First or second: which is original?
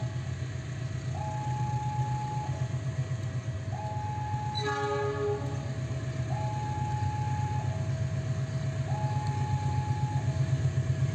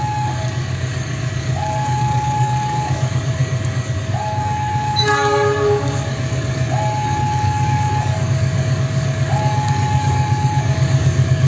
first